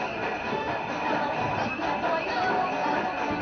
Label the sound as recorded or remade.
recorded